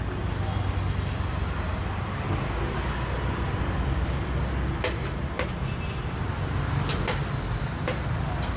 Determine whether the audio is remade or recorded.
recorded